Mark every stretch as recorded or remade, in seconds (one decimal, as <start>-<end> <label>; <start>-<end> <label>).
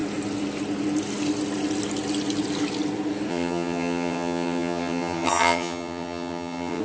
0.0-3.3 recorded; 3.3-6.8 remade